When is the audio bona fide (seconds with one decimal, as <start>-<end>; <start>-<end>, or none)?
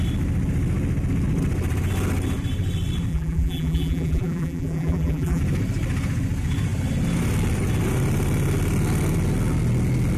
0.0-3.1; 5.4-10.2